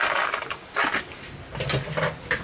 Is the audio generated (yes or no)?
no